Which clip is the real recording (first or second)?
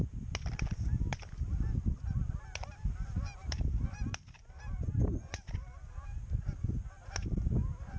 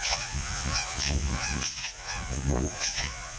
first